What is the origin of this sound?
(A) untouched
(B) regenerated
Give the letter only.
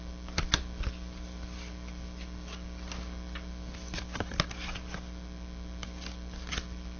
A